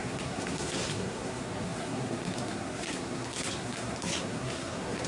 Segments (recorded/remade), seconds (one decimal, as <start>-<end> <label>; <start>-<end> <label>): 0.0-5.1 remade